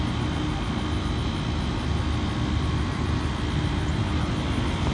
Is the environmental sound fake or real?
real